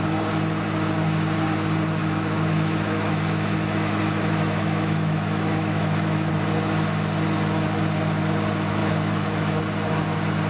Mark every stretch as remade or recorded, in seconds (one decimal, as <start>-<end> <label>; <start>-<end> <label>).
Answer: 0.0-2.0 recorded; 2.0-6.3 remade; 6.3-8.8 recorded; 8.8-9.6 remade; 9.6-10.5 recorded